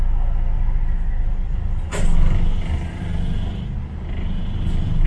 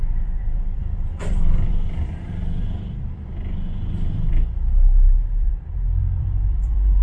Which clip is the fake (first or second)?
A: second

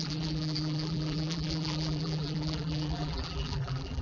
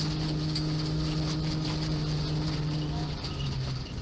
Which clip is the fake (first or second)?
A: first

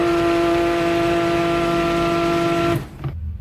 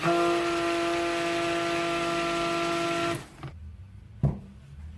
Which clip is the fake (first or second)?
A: first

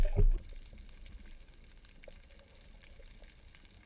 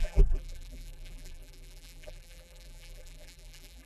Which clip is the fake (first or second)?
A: second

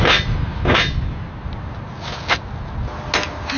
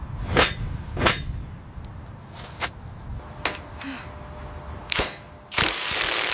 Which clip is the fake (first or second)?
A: second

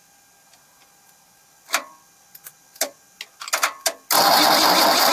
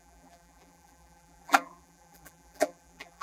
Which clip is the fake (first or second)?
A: second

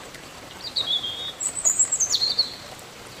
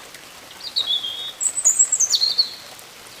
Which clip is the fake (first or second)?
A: first